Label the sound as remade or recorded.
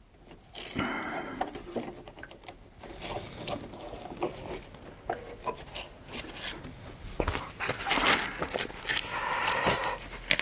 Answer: recorded